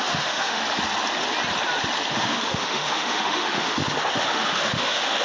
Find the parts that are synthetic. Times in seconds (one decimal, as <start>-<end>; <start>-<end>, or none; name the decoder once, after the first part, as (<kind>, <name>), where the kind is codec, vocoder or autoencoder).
0.0-0.6 (autoencoder, DAC-VAE); 2.1-5.2